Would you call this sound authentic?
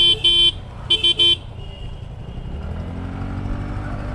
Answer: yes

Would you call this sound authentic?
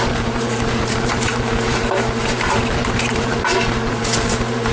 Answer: no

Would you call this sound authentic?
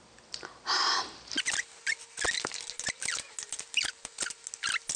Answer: yes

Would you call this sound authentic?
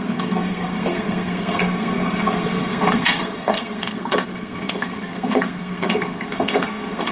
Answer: no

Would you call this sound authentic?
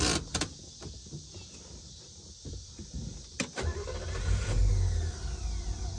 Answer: yes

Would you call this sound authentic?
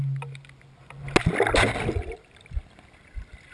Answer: yes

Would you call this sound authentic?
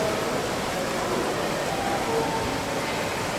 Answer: yes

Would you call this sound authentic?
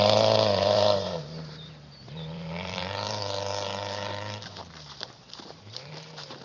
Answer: no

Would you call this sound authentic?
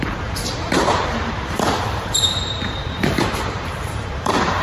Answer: no